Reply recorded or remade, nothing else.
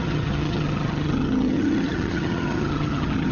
remade